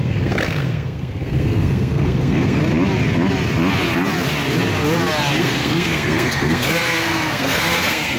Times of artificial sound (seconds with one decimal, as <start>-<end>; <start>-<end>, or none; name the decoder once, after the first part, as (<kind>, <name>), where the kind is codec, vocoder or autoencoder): 0.0-2.6 (codec, SNAC); 5.4-8.2